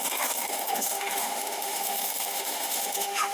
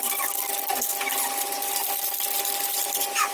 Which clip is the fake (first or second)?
first